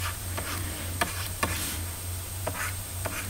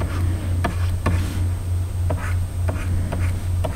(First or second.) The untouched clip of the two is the second